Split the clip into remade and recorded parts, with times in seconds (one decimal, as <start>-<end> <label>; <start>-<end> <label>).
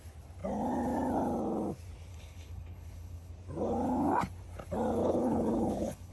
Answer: 0.0-2.1 recorded; 2.1-3.3 remade; 3.3-5.0 recorded; 5.0-6.1 remade